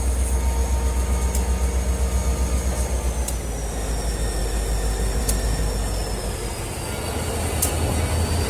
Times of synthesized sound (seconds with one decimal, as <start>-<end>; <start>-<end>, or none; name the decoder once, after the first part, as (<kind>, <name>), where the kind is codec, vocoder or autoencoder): none